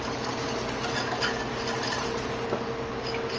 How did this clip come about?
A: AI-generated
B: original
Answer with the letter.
B